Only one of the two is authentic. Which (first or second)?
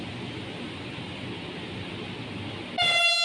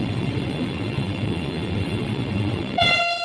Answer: first